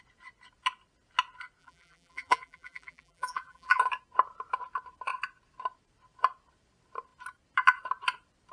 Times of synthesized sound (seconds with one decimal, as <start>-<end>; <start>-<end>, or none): 1.6-3.8